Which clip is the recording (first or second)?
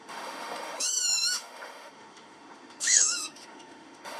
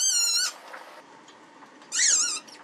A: second